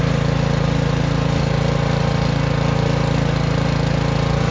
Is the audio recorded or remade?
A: recorded